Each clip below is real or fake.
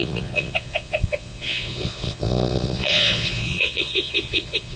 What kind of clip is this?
fake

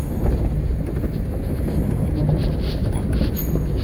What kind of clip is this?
real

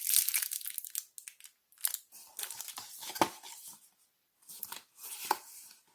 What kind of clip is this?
real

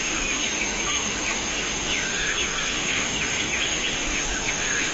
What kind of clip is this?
fake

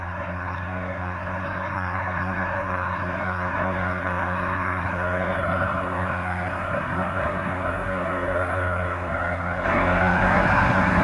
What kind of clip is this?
fake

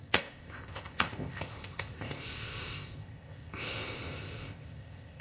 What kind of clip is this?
fake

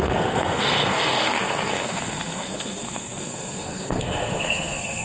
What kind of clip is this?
fake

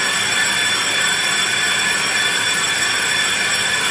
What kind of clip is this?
real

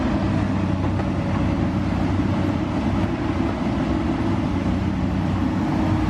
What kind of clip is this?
real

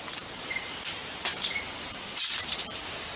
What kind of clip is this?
fake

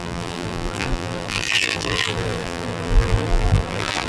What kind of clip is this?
fake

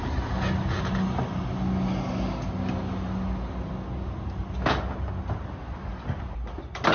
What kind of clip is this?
real